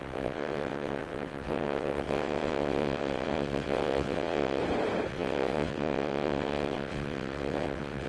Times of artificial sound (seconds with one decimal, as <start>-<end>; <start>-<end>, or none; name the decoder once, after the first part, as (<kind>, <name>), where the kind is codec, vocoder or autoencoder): 0.0-4.6 (vocoder, WaveNeXt); 5.1-8.1